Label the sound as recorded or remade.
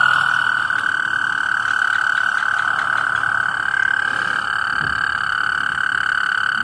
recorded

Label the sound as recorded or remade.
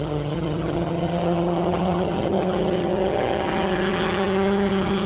remade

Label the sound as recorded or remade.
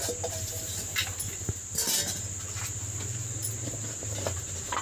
recorded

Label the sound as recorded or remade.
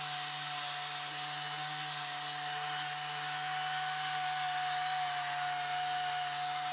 recorded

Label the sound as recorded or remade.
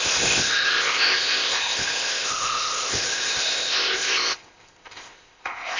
remade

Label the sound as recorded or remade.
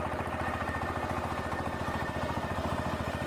remade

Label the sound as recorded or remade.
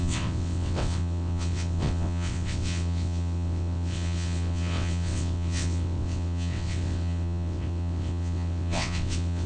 remade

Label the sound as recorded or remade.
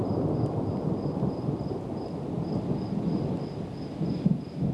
recorded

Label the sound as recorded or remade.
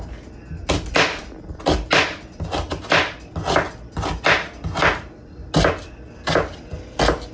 recorded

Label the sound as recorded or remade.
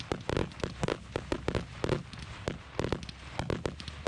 recorded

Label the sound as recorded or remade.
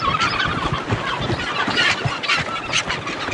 recorded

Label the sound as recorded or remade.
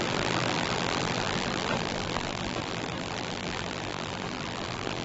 remade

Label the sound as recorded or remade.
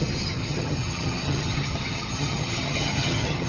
remade